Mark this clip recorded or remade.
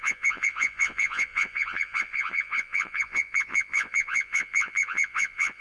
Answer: remade